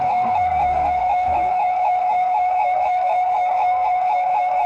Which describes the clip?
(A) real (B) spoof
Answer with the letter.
B